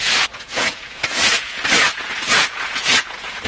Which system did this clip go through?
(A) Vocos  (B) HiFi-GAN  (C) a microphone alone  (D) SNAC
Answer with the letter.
A